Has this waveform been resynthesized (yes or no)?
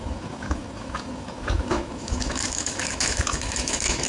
yes